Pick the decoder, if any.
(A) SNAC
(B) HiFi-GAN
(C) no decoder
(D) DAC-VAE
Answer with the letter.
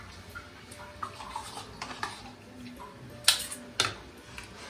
C